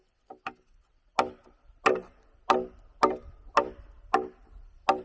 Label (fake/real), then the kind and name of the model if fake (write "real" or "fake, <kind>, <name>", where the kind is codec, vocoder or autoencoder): real